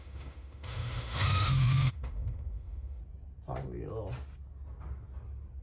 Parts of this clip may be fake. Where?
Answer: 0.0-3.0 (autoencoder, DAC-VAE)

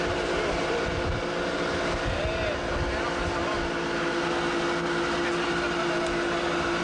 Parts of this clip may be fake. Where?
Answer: none

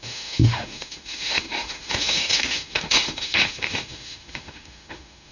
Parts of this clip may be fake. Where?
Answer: 0.0-5.3 (autoencoder, DAC-VAE)